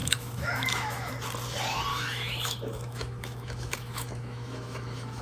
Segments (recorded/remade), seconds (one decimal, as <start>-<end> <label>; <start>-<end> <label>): 0.0-1.1 remade; 1.1-1.9 recorded; 1.9-5.2 remade